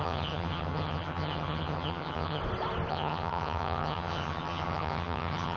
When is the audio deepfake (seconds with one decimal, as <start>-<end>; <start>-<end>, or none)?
0.0-2.4; 2.9-5.6